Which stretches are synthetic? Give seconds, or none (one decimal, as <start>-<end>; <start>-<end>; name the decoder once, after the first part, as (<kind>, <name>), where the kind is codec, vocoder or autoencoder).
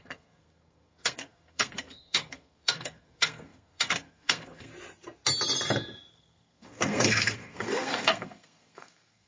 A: 0.0-4.7 (codec, SNAC); 6.1-9.3